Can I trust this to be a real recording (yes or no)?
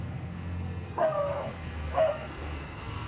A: no